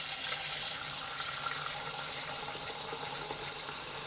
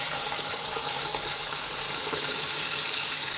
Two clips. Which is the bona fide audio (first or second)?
first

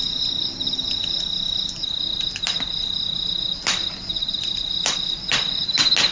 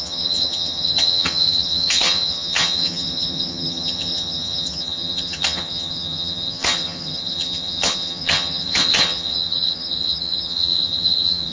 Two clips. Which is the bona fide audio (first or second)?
first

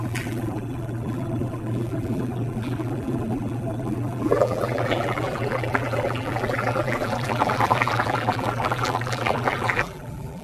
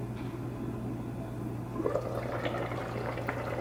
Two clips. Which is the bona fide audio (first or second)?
second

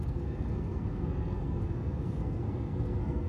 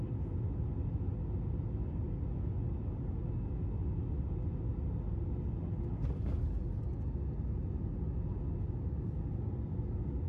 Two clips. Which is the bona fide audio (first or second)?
second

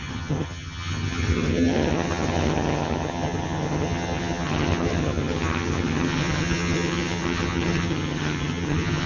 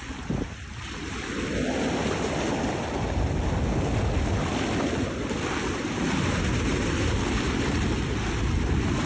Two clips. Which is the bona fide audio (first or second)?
second